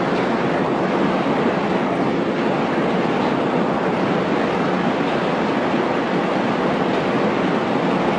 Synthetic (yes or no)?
no